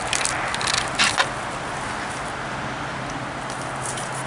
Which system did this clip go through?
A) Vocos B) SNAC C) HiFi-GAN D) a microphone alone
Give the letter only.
D